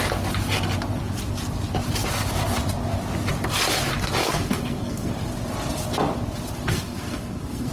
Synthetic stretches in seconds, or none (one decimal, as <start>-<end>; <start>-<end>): 4.2-5.1; 6.7-7.7